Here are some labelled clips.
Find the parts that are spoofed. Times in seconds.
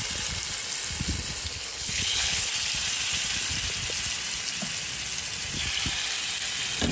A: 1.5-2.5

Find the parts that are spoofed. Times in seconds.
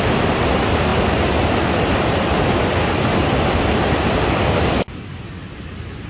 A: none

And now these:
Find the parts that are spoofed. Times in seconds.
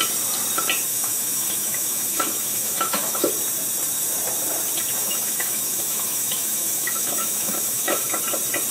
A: 0.9-3.3; 5.0-8.2